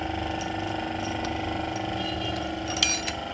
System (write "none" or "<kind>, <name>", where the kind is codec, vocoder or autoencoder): none